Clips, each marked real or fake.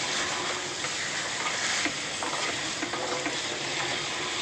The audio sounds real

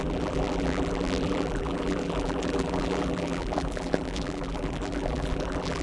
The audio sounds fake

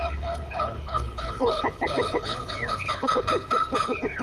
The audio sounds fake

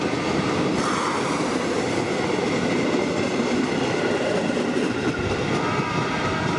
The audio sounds fake